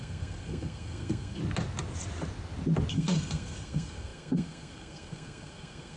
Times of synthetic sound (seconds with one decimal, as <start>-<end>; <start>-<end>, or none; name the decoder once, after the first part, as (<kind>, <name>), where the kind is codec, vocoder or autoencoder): 0.0-1.4 (codec, SNAC); 2.9-6.0